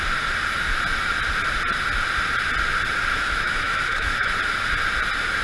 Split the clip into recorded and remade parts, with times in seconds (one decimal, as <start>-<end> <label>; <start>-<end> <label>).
0.0-3.1 recorded; 3.1-4.3 remade; 4.3-5.4 recorded